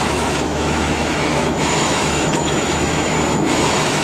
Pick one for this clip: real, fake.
fake